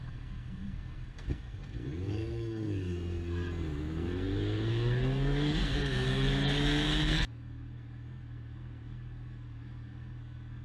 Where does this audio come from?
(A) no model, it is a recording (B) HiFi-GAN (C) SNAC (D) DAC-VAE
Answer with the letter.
C